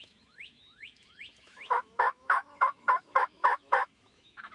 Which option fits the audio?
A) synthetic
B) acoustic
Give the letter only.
A